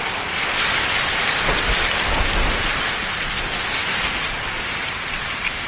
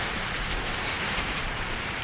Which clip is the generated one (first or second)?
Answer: second